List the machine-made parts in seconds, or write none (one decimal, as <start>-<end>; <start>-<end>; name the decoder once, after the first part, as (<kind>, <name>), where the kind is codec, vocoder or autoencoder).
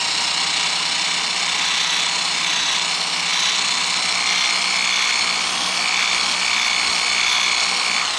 none